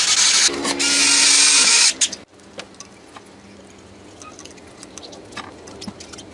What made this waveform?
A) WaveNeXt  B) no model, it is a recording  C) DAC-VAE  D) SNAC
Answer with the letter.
B